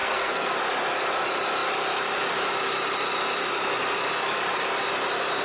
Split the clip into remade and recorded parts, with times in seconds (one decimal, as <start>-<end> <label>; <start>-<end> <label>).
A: 0.0-0.6 remade; 0.6-5.4 recorded